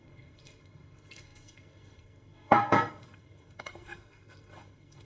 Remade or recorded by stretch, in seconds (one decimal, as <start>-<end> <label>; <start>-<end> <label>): 0.0-5.0 remade